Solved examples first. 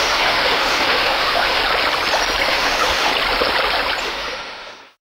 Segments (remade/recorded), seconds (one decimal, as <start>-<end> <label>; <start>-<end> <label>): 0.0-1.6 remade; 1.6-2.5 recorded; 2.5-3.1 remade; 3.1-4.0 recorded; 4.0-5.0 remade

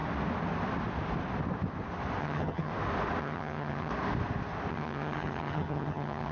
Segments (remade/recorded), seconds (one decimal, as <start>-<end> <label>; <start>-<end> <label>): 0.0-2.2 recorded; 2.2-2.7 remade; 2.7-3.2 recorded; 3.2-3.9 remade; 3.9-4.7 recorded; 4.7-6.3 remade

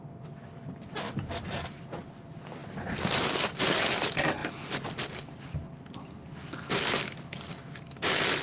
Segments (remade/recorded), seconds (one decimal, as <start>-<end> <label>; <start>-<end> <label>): 0.0-4.4 remade; 4.4-5.0 recorded; 5.0-5.6 remade; 5.6-7.4 recorded; 7.4-8.4 remade

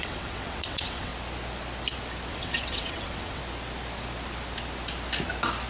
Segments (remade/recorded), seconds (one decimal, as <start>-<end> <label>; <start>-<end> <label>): 0.0-1.1 remade; 1.1-2.3 recorded; 2.3-3.4 remade; 3.4-5.7 recorded

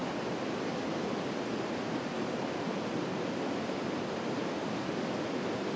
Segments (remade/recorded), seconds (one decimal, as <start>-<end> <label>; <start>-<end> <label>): 0.0-5.8 recorded